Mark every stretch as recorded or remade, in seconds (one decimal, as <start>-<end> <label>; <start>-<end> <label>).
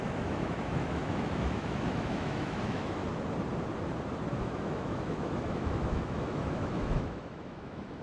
0.0-3.0 remade; 3.0-4.4 recorded; 4.4-8.0 remade